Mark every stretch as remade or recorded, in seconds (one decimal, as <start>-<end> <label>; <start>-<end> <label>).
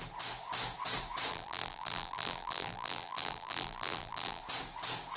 0.0-1.3 recorded; 1.3-4.4 remade; 4.4-5.2 recorded